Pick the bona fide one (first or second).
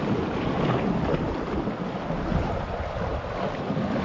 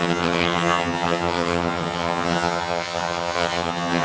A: first